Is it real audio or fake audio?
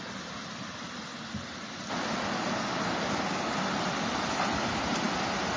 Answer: real